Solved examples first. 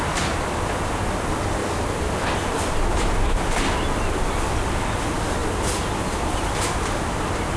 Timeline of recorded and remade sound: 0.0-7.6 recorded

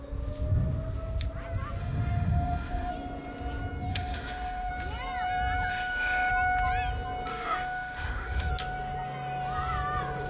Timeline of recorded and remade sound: 0.0-1.8 recorded; 1.8-2.9 remade; 2.9-3.9 recorded; 3.9-4.7 remade; 4.7-5.7 recorded; 5.7-6.3 remade; 6.3-7.3 recorded; 7.3-8.5 remade; 8.5-10.3 recorded

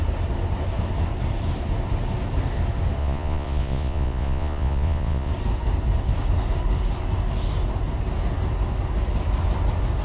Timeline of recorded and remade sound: 0.0-3.0 recorded; 3.0-5.3 remade; 5.3-10.0 recorded